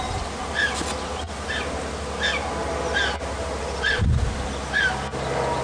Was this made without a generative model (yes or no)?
yes